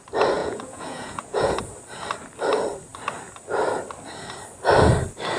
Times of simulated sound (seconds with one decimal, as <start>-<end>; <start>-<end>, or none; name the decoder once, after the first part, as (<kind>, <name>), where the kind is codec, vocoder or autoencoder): 0.4-1.6 (vocoder, Vocos)